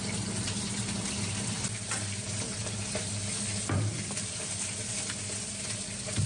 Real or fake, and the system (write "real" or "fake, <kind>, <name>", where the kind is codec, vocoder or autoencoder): real